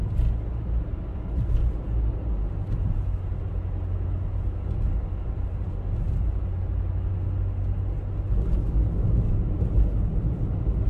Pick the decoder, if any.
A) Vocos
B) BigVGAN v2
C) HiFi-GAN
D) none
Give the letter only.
D